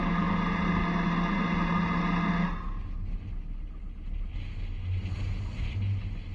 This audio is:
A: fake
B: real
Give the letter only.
B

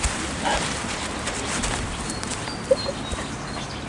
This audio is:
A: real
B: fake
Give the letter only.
A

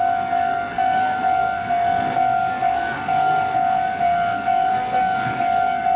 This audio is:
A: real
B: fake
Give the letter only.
B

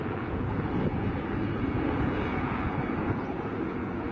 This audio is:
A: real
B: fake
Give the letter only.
B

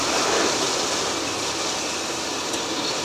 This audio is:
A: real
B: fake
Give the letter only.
A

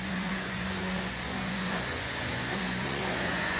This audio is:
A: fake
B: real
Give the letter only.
A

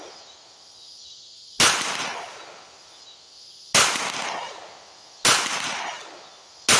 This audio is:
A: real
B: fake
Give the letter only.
A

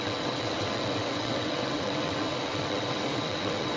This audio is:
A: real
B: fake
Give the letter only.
B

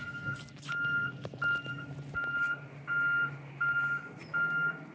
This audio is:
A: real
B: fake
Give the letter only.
A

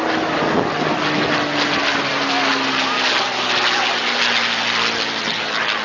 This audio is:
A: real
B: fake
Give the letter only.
A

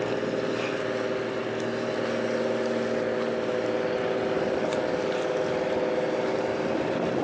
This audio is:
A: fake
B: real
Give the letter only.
B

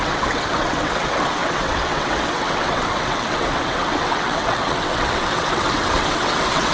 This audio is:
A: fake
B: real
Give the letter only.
A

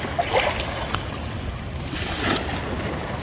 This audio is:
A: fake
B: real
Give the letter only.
B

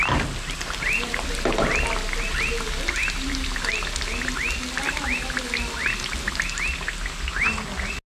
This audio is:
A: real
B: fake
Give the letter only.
A